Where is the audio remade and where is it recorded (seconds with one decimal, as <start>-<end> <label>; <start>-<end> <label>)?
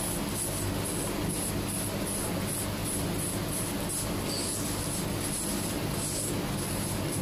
0.0-7.2 recorded